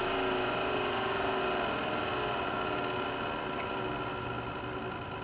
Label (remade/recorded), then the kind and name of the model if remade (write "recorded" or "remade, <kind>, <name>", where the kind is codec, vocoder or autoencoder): recorded